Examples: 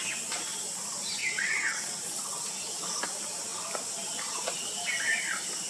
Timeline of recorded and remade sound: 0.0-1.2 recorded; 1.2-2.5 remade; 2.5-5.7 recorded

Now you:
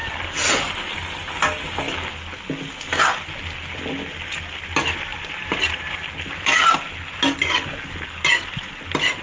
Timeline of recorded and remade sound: 0.0-5.1 recorded; 5.1-5.9 remade; 5.9-9.2 recorded

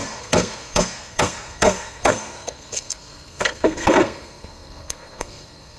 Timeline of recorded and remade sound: 0.0-5.8 remade